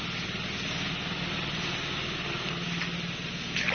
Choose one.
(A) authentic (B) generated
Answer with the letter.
A